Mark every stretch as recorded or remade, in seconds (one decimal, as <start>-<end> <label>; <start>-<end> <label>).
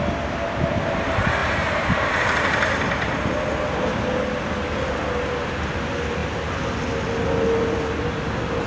0.0-1.4 recorded; 1.4-4.0 remade; 4.0-8.7 recorded